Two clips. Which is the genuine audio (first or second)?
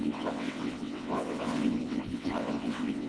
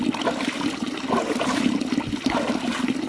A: second